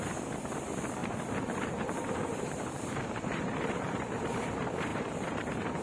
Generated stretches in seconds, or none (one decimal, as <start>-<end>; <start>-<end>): 1.0-4.5; 4.9-5.8